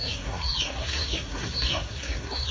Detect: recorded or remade remade